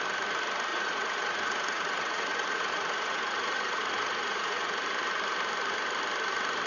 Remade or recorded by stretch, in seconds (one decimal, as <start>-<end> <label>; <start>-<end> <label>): 0.0-0.7 recorded; 0.7-4.7 remade; 4.7-6.7 recorded